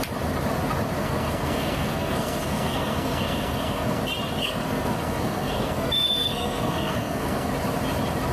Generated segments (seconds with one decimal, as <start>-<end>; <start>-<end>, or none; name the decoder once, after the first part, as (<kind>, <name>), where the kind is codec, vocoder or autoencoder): 1.0-4.0 (codec, SNAC); 4.4-7.5